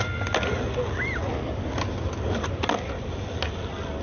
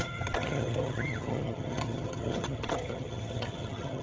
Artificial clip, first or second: second